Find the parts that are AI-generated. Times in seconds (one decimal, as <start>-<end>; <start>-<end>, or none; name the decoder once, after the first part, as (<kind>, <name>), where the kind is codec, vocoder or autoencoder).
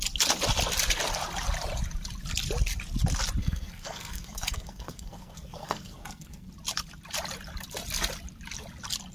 3.4-6.5 (codec, SNAC)